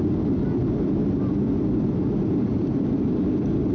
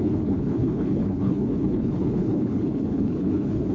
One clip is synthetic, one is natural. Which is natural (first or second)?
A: first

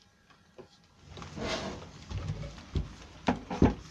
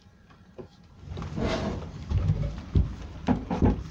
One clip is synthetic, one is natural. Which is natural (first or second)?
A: first